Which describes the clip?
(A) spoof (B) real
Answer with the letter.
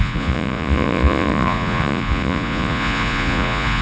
A